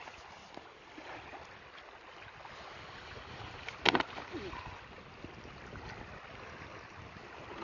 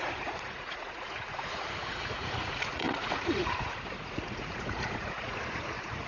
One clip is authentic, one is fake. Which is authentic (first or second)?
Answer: first